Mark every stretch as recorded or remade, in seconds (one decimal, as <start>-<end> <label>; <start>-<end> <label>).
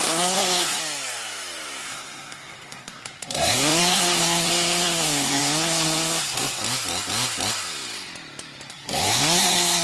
0.0-0.8 remade; 0.8-1.8 recorded; 1.8-6.6 remade; 6.6-8.7 recorded; 8.7-9.8 remade